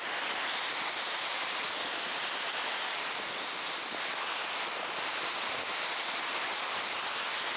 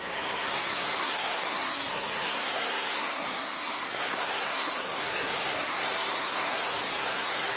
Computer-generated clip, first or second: second